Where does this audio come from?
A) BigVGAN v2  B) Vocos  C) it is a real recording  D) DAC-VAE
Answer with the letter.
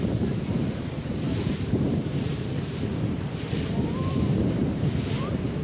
A